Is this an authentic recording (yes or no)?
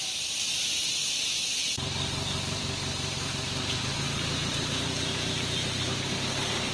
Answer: no